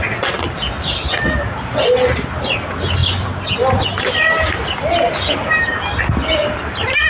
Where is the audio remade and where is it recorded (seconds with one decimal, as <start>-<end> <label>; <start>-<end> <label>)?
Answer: 0.0-7.1 recorded